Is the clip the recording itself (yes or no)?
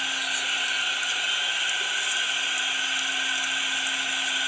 yes